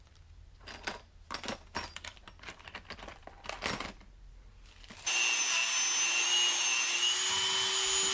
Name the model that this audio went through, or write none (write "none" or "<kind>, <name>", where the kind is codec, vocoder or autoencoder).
none